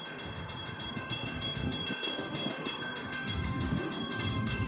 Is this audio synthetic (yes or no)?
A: yes